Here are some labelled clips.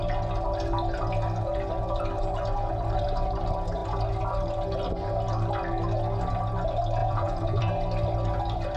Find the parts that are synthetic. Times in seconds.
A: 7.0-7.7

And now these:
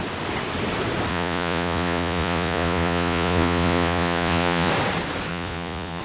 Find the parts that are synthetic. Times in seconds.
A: 1.1-4.7; 5.3-6.0

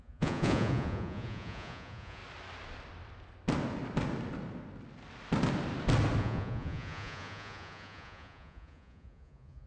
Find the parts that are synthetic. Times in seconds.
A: 0.0-2.2; 6.2-9.7

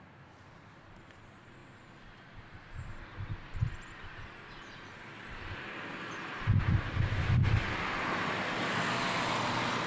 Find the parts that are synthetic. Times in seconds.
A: none

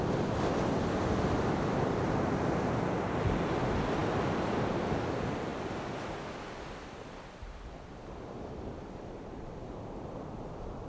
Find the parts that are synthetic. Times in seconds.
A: none

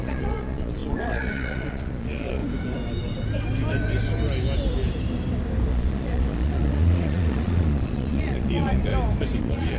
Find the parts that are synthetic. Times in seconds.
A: 0.0-2.4; 5.7-8.9; 9.4-9.8

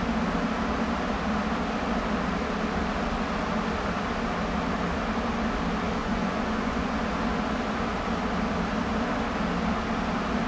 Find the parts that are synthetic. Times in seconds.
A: 6.0-7.0

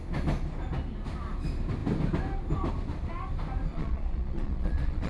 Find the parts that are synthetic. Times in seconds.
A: 3.7-5.1